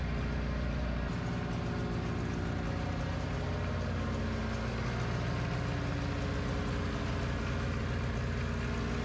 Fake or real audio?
real